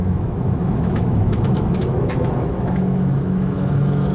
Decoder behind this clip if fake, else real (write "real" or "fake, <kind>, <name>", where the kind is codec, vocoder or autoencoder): fake, autoencoder, DAC-VAE